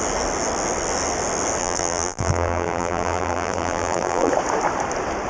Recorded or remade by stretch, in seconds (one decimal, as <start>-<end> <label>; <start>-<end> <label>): 0.0-1.6 recorded; 1.6-4.3 remade; 4.3-5.3 recorded